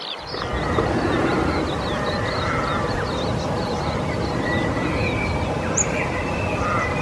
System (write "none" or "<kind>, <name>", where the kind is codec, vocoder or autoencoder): none